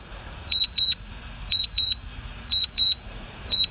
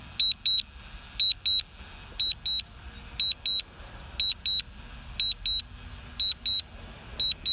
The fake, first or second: first